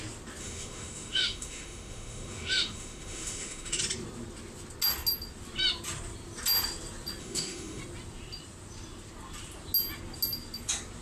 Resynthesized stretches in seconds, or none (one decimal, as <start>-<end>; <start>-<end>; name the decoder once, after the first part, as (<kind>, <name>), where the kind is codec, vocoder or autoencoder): 0.4-3.8 (autoencoder, DAC-VAE); 7.2-7.8